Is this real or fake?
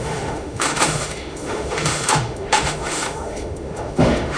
fake